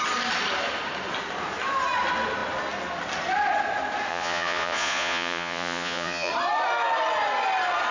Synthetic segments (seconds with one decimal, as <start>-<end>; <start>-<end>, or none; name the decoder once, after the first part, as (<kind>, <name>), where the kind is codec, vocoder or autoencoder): 4.1-6.3 (vocoder, Vocos)

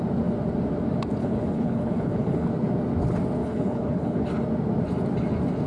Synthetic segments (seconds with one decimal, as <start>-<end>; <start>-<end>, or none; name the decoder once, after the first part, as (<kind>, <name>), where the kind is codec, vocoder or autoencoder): 1.2-2.5 (codec, HILCodec); 3.4-4.3